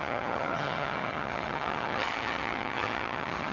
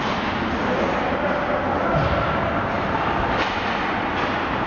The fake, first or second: first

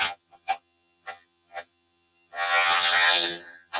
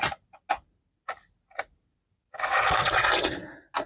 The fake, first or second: first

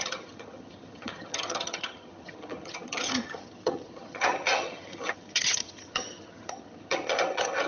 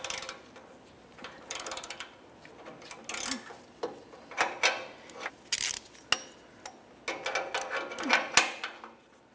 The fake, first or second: first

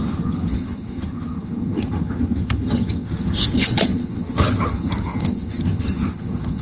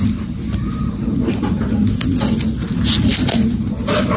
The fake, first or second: first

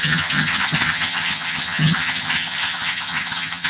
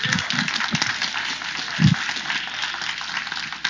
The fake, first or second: first